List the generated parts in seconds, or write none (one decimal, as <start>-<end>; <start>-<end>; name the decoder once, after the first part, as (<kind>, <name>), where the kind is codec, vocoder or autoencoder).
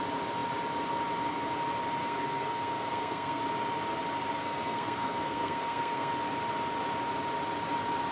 2.0-3.4 (codec, SNAC); 4.4-6.1